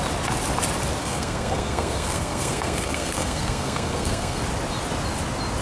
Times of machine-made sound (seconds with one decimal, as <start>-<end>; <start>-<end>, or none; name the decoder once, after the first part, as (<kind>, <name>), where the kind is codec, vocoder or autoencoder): 1.0-4.4 (codec, SNAC)

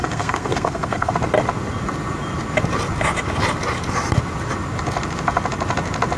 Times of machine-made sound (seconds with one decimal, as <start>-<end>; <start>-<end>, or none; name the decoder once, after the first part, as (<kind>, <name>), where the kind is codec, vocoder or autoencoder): 0.0-1.1 (codec, SNAC)

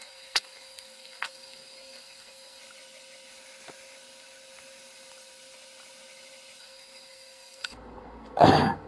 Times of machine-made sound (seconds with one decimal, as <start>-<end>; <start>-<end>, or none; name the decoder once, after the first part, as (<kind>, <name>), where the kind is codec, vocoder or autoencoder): 0.0-2.6 (codec, SNAC); 6.6-8.9

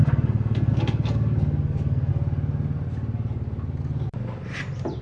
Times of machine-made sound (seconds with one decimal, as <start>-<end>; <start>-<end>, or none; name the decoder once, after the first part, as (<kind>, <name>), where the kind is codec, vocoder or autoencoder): 0.0-2.1 (codec, SNAC)

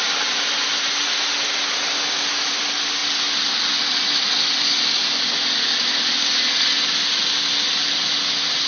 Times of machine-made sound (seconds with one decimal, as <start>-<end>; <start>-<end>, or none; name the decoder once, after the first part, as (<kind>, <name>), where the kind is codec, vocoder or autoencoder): none

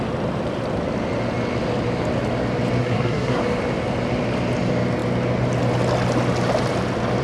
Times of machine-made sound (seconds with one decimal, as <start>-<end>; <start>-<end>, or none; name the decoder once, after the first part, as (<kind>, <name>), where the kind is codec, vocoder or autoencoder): 2.8-3.4 (codec, SNAC)

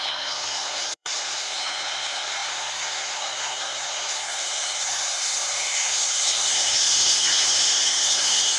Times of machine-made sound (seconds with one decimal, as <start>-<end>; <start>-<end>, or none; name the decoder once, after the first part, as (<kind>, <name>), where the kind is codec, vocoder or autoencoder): 0.0-8.6 (codec, SNAC)

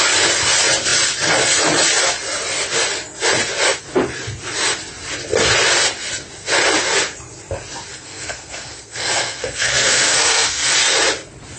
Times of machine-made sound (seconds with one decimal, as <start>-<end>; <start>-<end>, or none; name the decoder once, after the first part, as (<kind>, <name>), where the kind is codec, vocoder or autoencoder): 7.9-10.7 (codec, SNAC)